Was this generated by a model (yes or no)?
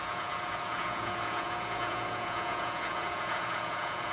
yes